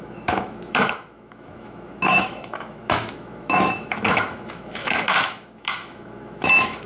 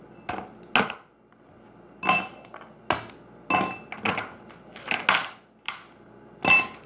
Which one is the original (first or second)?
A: second